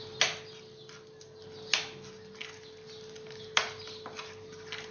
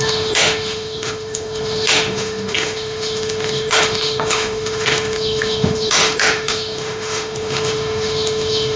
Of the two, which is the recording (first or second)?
first